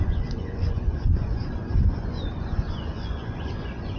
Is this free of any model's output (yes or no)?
no